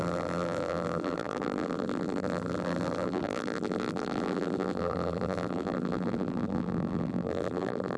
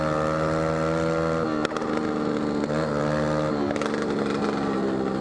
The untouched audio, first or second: second